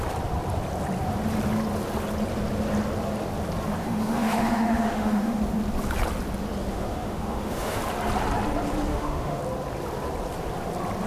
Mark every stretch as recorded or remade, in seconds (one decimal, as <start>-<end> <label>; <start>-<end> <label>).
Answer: 0.0-3.8 recorded; 3.8-5.4 remade; 5.4-6.7 recorded; 6.7-7.8 remade; 7.8-8.9 recorded; 8.9-9.4 remade; 9.4-11.1 recorded